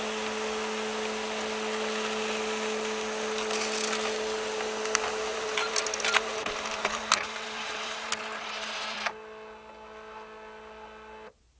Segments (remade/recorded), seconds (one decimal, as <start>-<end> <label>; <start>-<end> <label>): 0.0-5.3 recorded; 5.3-9.1 remade; 9.1-11.6 recorded

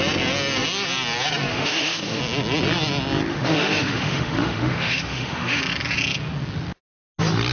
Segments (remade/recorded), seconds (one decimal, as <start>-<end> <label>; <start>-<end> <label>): 0.0-1.5 recorded; 1.5-2.2 remade; 2.2-3.3 recorded; 3.3-5.6 remade; 5.6-7.5 recorded

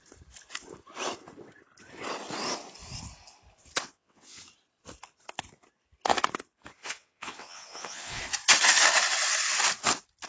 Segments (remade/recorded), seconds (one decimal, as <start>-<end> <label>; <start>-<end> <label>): 0.0-3.8 recorded; 3.8-4.4 remade; 4.4-6.8 recorded; 6.8-8.2 remade; 8.2-10.3 recorded

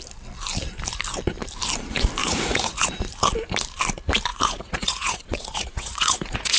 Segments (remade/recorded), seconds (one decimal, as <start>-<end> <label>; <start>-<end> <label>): 0.0-2.2 recorded; 2.2-2.9 remade; 2.9-4.3 recorded; 4.3-6.6 remade

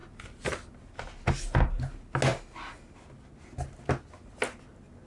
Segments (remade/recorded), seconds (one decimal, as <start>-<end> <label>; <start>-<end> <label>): 0.0-5.1 recorded

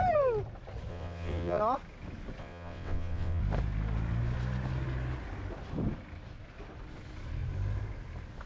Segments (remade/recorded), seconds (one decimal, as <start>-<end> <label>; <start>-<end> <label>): 0.0-0.9 recorded; 0.9-1.6 remade; 1.6-2.4 recorded; 2.4-3.4 remade; 3.4-8.5 recorded

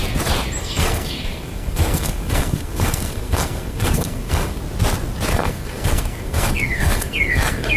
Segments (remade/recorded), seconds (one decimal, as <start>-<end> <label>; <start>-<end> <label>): 0.0-0.6 recorded; 0.6-4.6 remade; 4.6-5.3 recorded; 5.3-7.8 remade

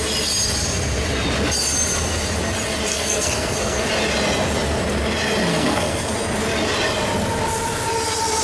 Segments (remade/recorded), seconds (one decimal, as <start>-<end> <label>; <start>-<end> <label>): 0.0-2.9 recorded; 2.9-3.9 remade; 3.9-5.5 recorded; 5.5-6.1 remade; 6.1-8.4 recorded